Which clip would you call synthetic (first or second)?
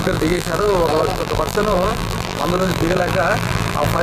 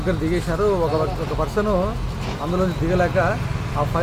first